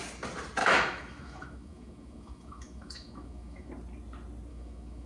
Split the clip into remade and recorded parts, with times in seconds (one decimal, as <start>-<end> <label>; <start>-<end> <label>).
0.0-0.6 recorded; 0.6-3.7 remade; 3.7-4.5 recorded; 4.5-5.1 remade